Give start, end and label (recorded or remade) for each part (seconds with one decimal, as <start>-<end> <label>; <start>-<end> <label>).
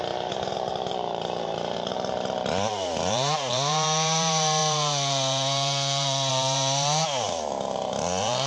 0.0-8.5 remade